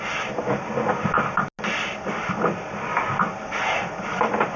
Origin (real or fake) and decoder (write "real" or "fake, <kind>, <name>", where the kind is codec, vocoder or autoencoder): real